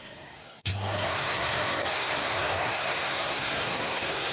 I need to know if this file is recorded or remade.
remade